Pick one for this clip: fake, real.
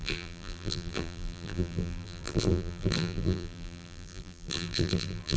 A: fake